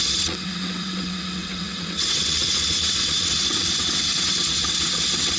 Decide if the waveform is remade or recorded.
remade